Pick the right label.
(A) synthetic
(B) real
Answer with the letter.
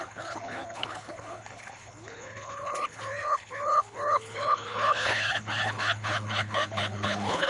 A